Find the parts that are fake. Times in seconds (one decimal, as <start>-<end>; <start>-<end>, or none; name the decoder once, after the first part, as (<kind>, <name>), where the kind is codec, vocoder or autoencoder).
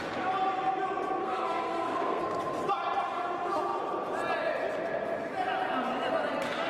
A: 1.2-2.2 (codec, SNAC)